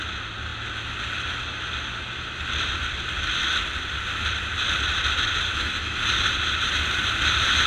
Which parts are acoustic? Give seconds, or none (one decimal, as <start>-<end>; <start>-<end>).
0.0-5.5; 6.0-7.7